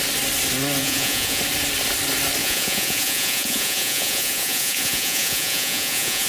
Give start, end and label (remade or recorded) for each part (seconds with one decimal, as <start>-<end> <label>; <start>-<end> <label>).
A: 0.0-0.8 recorded; 0.8-1.4 remade; 1.4-2.4 recorded; 2.4-6.3 remade